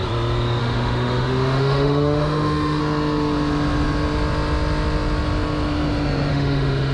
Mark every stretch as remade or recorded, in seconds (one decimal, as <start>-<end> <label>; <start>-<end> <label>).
0.0-0.6 recorded; 0.6-2.8 remade; 2.8-6.3 recorded; 6.3-6.9 remade